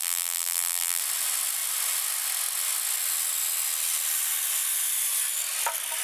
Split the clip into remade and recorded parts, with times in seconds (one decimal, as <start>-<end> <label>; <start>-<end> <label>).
0.0-1.0 remade; 1.0-6.0 recorded

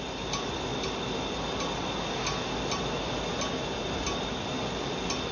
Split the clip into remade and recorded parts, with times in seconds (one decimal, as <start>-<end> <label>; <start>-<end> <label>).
0.0-5.3 recorded

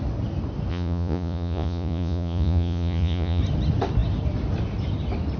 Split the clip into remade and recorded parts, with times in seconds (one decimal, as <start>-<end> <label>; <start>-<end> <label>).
0.0-0.7 recorded; 0.7-3.4 remade; 3.4-5.4 recorded

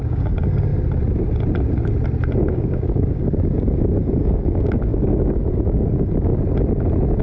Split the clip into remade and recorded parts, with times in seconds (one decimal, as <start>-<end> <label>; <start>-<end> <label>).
0.0-0.7 remade; 0.7-2.5 recorded; 2.5-6.3 remade; 6.3-7.2 recorded

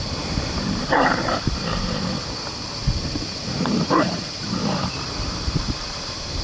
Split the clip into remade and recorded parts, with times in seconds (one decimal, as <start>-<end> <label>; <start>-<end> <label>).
0.0-2.8 remade; 2.8-3.5 recorded; 3.5-6.4 remade

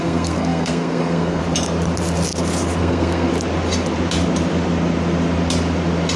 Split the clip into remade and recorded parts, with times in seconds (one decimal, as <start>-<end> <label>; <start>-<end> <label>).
0.0-1.4 remade; 1.4-2.8 recorded; 2.8-3.3 remade; 3.3-6.2 recorded

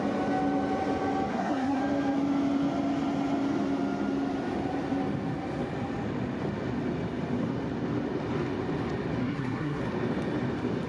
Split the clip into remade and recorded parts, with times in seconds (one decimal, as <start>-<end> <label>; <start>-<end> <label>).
0.0-1.3 recorded; 1.3-1.8 remade; 1.8-9.2 recorded; 9.2-9.8 remade; 9.8-10.9 recorded

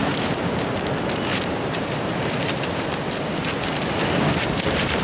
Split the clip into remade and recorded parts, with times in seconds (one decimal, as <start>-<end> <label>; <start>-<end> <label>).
0.0-1.3 recorded; 1.3-4.3 remade; 4.3-5.0 recorded